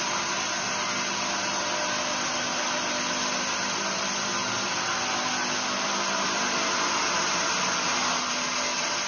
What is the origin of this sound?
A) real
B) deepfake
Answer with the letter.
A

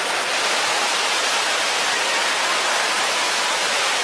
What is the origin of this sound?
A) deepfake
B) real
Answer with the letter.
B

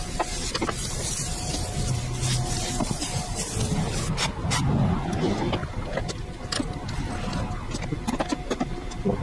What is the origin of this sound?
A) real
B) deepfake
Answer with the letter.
A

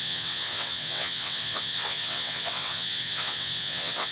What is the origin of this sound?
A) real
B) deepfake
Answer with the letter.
B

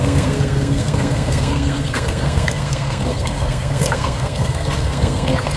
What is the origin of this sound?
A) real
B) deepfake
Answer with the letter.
B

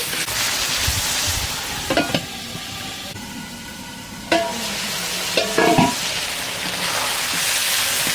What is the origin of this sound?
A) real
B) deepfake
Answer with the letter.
A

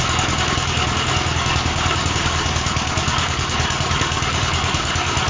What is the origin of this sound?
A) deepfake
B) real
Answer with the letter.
A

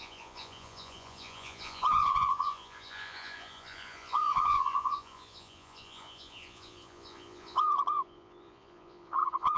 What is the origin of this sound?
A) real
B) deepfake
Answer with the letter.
B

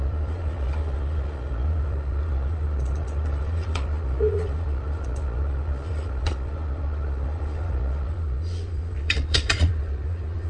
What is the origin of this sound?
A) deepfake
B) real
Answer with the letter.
A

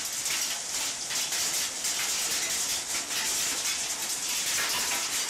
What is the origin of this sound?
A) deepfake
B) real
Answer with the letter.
B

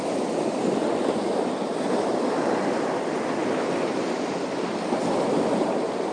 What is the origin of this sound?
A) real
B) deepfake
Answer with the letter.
A